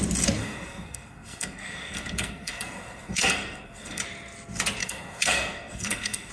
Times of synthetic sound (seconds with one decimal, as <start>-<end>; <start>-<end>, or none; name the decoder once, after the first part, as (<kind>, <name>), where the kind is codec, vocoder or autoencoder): 0.4-4.0 (codec, SNAC); 4.8-6.3